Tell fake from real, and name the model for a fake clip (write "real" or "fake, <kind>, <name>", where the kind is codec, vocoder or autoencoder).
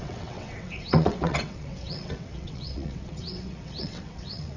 fake, vocoder, WaveNeXt